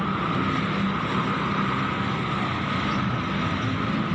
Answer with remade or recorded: recorded